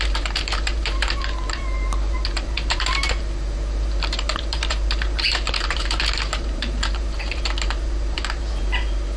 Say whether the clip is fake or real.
fake